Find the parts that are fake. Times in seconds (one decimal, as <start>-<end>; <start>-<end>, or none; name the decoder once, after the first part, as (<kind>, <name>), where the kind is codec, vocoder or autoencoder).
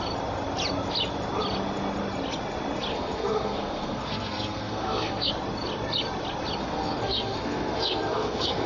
2.9-5.3 (codec, SNAC); 6.6-8.7